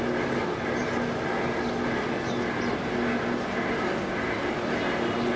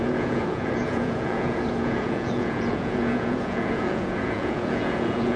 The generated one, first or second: second